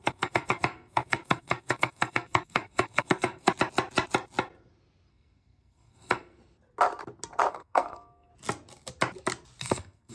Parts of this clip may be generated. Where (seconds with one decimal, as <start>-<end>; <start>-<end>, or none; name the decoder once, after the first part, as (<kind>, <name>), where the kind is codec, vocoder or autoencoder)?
0.0-3.5 (codec, SNAC); 5.1-6.4; 7.5-8.3; 9.6-10.1